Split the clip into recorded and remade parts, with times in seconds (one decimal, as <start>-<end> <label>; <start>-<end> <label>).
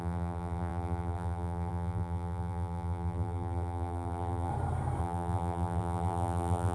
0.0-4.5 remade; 4.5-5.0 recorded; 5.0-6.7 remade